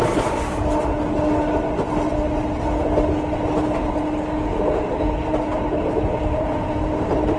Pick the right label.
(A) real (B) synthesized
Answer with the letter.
A